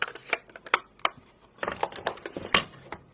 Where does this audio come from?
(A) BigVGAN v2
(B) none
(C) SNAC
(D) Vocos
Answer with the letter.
B